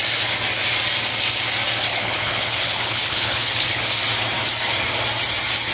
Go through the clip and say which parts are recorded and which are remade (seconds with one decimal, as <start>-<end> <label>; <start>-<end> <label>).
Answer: 0.0-1.9 recorded; 1.9-3.8 remade; 3.8-5.7 recorded